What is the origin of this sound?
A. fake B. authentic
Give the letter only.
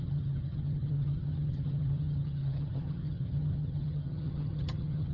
A